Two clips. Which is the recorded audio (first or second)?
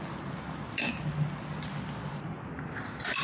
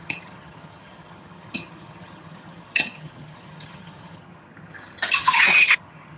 first